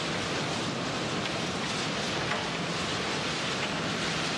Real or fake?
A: real